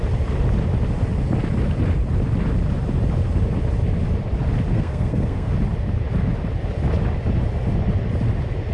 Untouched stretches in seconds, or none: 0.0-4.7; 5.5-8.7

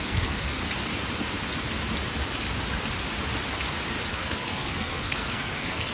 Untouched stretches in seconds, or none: 0.6-4.1